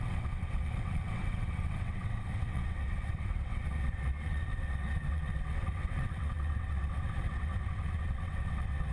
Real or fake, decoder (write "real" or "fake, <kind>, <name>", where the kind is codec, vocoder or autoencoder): fake, vocoder, WaveNeXt